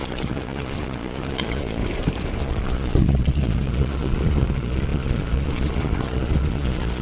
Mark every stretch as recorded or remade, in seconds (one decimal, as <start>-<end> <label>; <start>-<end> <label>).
0.0-1.8 remade; 1.8-2.4 recorded; 2.4-7.0 remade